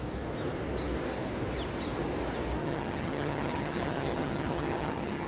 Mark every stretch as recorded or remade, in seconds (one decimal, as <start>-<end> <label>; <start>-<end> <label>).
0.0-2.6 recorded; 2.6-5.3 remade

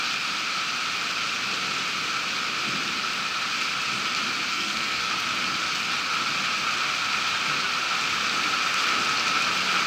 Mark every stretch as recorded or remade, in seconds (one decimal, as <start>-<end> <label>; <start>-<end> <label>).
0.0-4.5 recorded; 4.5-5.1 remade; 5.1-9.9 recorded